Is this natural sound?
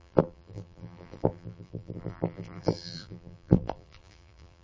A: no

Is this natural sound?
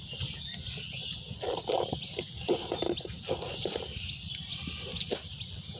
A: yes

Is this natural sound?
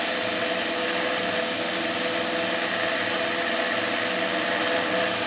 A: yes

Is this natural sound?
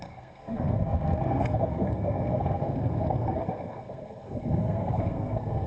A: no